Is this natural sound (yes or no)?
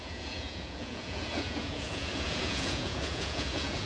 no